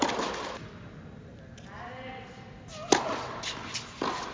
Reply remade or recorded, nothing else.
recorded